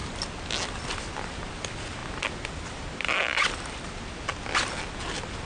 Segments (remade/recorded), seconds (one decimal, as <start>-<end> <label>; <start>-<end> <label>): 0.0-1.3 recorded; 1.3-5.5 remade